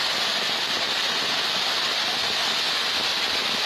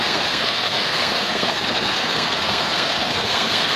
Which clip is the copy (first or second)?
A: second